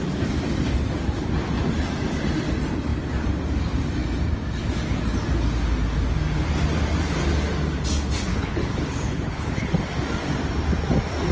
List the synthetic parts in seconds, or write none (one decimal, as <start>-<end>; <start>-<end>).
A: 8.3-9.7